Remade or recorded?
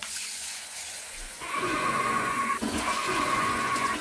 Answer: remade